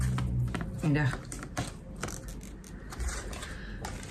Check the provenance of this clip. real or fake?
real